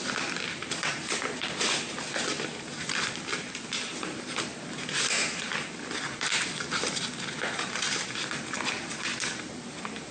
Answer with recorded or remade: remade